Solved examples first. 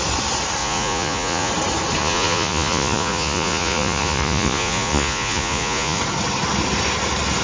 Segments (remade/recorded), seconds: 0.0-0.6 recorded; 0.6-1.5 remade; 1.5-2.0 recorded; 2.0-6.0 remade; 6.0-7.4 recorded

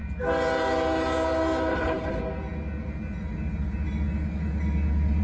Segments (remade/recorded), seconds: 0.0-1.7 recorded; 1.7-2.2 remade; 2.2-5.2 recorded